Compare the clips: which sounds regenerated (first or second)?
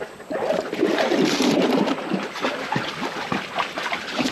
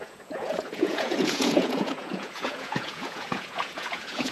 second